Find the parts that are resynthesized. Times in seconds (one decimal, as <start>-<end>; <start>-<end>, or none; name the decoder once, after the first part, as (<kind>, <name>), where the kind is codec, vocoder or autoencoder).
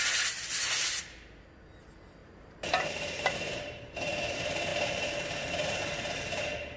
2.2-3.8 (vocoder, BigVGAN v2)